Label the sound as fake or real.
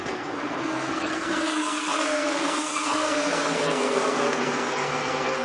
fake